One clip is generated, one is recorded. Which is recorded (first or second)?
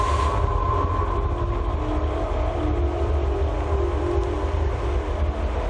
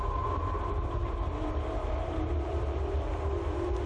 first